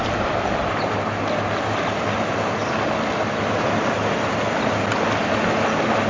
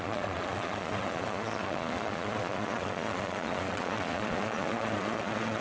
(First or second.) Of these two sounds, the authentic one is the first